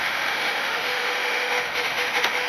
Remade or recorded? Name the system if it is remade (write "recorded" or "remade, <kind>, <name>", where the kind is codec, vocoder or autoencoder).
remade, autoencoder, DAC-VAE